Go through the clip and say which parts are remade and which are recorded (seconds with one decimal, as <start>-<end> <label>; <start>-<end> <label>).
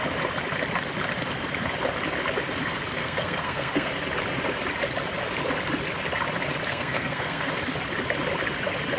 0.0-3.0 recorded; 3.0-3.9 remade; 3.9-6.7 recorded; 6.7-7.5 remade; 7.5-9.0 recorded